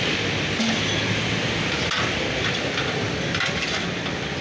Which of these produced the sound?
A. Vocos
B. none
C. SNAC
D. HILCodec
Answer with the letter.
B